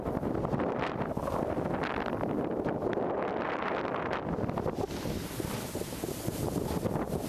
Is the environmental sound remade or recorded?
recorded